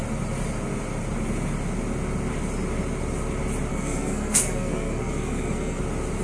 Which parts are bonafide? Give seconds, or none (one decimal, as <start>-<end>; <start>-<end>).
0.0-3.7; 5.8-6.2